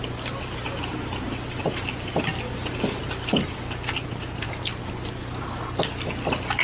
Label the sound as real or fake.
real